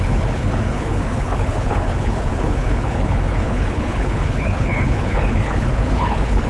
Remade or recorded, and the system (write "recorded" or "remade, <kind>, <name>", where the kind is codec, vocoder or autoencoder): remade, codec, HILCodec